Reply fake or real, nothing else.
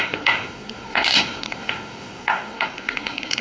fake